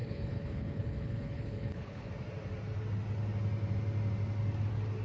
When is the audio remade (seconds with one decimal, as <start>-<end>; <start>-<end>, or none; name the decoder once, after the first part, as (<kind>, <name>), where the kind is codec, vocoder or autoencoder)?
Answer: 0.0-2.1 (codec, HILCodec)